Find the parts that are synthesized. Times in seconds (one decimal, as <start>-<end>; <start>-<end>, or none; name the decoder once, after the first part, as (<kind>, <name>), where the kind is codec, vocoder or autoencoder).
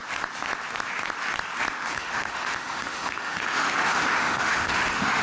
1.9-5.2 (autoencoder, DAC-VAE)